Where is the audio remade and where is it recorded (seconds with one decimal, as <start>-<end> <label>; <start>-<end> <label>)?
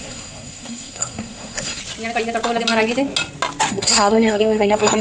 0.0-1.8 remade; 1.8-3.7 recorded; 3.7-5.0 remade